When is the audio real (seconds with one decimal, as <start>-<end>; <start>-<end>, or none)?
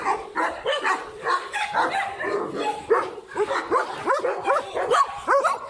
0.0-5.7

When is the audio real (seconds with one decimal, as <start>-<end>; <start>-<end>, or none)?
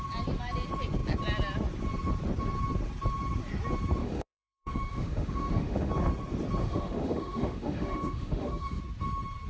0.0-4.0; 5.9-6.6; 8.8-9.5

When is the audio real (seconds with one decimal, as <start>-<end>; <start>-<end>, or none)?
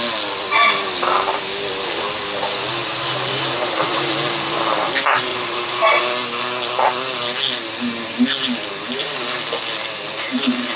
0.0-2.8; 4.1-5.3; 6.0-10.8